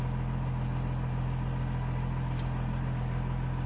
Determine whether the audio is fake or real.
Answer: real